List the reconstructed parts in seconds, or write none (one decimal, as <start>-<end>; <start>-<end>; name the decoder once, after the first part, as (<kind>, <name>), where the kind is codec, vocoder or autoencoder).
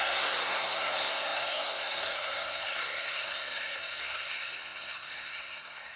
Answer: 0.0-6.0 (codec, SNAC)